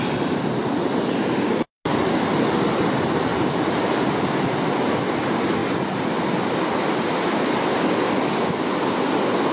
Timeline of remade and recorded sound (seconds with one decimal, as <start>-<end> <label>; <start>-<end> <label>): 0.0-9.5 recorded